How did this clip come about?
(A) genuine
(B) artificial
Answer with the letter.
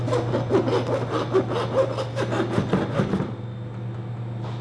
A